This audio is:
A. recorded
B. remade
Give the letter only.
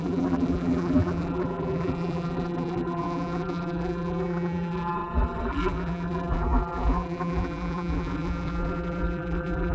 B